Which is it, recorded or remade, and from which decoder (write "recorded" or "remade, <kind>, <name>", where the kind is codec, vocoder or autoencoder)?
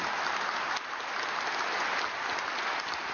recorded